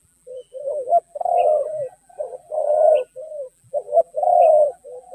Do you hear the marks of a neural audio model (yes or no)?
yes